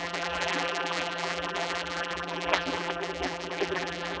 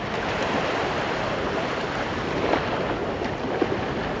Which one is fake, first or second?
first